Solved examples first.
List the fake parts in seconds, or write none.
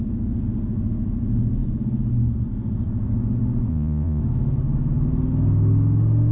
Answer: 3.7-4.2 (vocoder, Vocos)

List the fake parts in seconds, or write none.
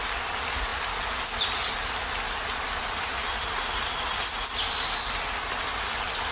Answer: none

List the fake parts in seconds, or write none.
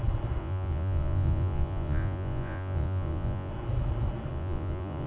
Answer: 0.4-3.5 (vocoder, Vocos); 4.3-5.1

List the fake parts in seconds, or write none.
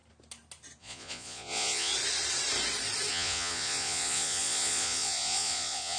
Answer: 0.8-1.9 (vocoder, Vocos); 3.1-6.0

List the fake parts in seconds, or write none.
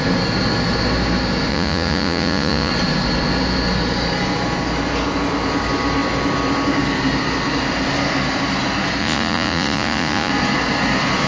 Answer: 1.5-2.7 (vocoder, Vocos); 9.0-10.3